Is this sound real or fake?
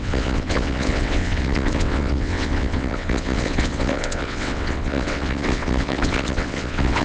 fake